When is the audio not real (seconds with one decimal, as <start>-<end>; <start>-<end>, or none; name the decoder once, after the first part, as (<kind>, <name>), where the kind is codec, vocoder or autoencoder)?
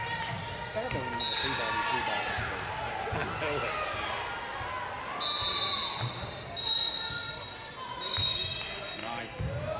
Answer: none